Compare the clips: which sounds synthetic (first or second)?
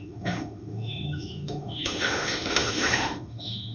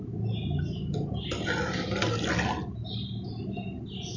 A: first